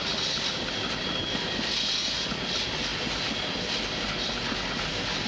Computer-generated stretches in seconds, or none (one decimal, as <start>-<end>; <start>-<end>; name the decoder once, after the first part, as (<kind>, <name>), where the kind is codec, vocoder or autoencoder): none